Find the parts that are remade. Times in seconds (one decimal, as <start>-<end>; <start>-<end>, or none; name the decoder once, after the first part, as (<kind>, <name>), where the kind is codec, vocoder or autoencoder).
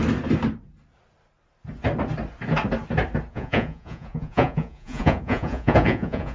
3.3-6.3 (vocoder, Vocos)